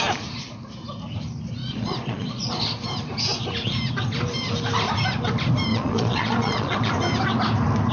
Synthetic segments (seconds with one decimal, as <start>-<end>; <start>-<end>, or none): 1.6-2.5; 5.7-6.9